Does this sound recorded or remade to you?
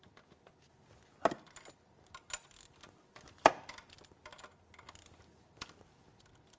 recorded